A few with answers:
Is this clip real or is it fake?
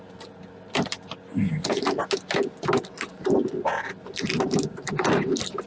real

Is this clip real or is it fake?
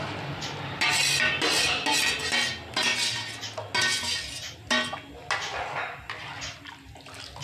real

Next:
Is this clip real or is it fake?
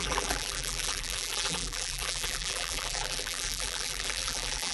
fake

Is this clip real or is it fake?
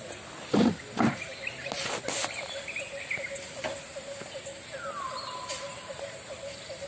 real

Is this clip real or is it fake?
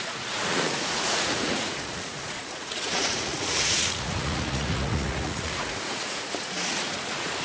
fake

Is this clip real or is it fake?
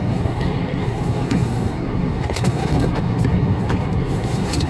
fake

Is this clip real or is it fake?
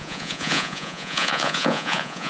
fake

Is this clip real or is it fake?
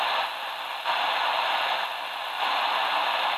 real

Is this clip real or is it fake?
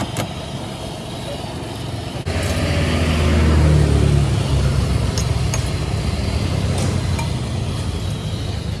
real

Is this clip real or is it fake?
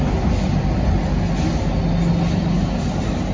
real